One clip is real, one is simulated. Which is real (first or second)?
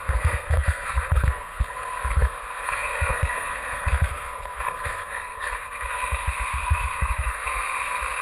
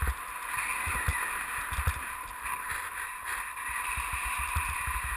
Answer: second